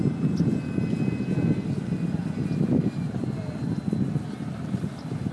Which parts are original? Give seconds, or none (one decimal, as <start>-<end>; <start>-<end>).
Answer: 0.0-5.3